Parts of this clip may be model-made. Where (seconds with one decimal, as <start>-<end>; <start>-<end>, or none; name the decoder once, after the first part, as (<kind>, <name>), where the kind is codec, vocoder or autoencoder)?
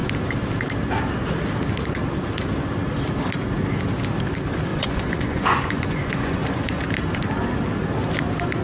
4.7-6.9 (vocoder, Vocos)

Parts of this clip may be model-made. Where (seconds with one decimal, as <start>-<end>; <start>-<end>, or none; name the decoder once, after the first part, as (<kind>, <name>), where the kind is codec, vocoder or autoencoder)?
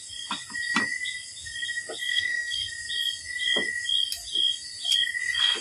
2.1-2.7 (codec, SNAC)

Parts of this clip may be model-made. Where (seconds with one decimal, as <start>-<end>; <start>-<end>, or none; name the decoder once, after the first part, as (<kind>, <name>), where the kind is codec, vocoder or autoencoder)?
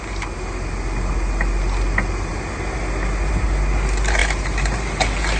none